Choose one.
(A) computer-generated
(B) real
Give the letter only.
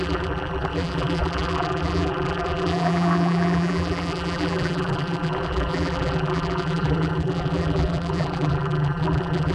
A